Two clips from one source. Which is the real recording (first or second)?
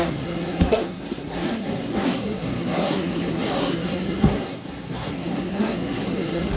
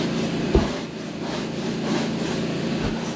second